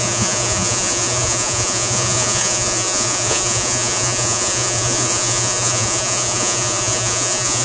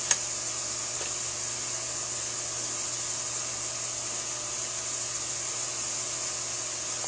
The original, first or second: second